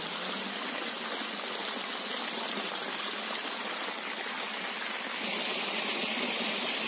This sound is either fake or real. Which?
real